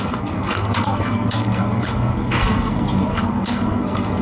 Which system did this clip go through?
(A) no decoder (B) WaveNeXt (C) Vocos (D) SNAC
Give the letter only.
D